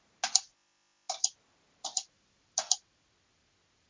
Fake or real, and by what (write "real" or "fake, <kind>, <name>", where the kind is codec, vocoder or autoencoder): real